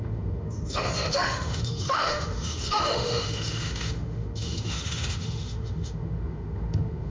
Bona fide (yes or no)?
no